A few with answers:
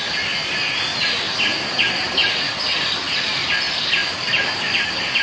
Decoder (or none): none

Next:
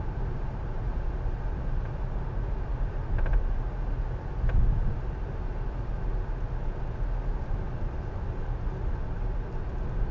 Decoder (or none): none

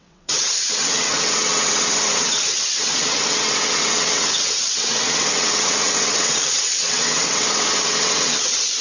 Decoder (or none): vocoder, WaveNeXt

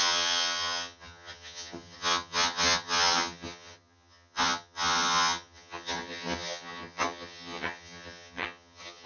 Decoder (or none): vocoder, HiFi-GAN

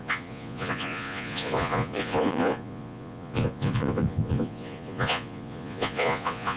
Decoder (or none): vocoder, Vocos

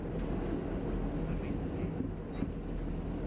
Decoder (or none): none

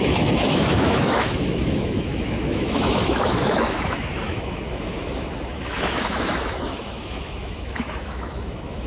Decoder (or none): autoencoder, DAC-VAE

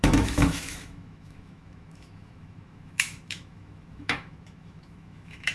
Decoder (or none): autoencoder, DAC-VAE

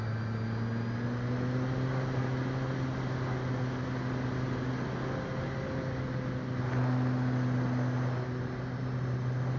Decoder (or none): none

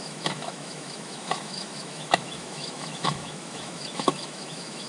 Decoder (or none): autoencoder, DAC-VAE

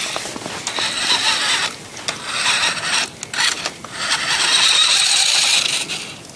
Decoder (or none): vocoder, BigVGAN v2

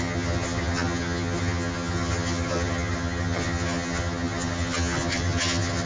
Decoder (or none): vocoder, HiFi-GAN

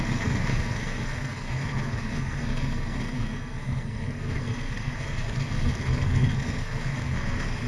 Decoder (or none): codec, SNAC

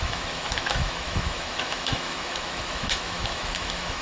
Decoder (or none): autoencoder, DAC-VAE